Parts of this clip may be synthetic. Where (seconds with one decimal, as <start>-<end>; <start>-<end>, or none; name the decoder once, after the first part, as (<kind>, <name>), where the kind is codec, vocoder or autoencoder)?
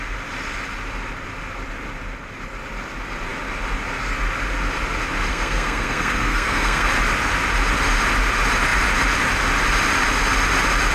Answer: 5.3-6.9 (codec, SNAC)